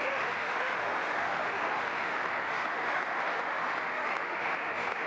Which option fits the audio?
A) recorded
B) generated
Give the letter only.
B